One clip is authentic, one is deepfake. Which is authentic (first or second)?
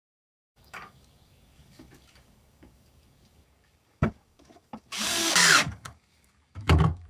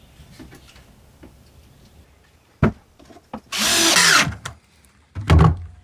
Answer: second